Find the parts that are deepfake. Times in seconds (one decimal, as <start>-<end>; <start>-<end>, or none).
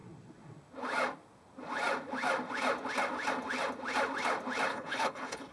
4.7-5.5